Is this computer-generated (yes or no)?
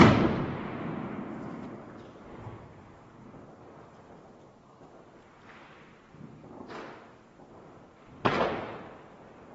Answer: no